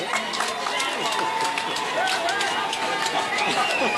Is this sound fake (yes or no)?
no